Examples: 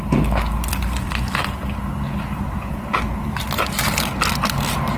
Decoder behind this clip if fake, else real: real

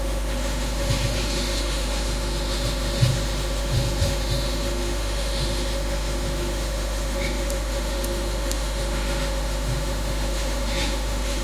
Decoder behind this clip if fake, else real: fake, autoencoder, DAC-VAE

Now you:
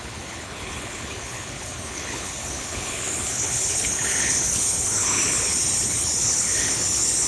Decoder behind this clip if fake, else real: fake, codec, HILCodec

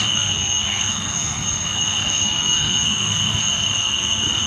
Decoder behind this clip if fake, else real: fake, codec, SNAC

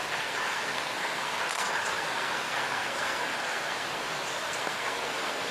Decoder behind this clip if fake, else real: fake, codec, SNAC